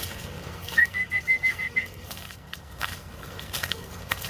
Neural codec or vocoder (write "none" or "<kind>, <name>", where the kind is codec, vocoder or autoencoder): codec, SNAC